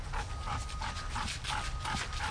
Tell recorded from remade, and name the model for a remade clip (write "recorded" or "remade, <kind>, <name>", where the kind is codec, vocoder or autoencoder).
recorded